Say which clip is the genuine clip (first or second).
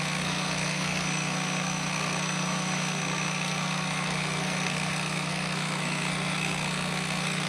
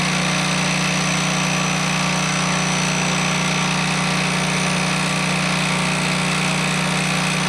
second